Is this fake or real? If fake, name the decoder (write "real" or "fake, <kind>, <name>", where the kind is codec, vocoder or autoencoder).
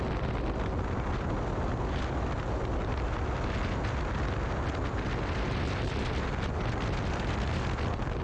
real